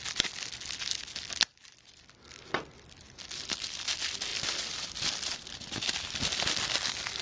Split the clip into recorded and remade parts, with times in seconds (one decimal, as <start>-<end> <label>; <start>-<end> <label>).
0.0-7.2 recorded